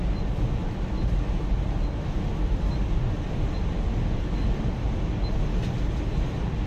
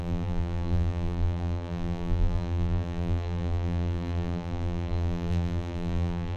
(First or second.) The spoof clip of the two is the second